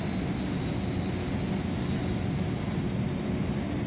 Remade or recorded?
recorded